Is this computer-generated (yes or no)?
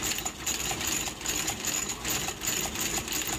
no